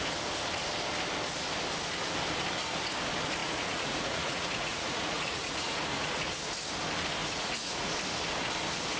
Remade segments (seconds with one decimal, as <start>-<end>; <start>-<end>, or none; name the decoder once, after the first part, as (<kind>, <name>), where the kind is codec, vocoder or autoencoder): 3.4-6.3 (vocoder, Vocos); 7.2-7.9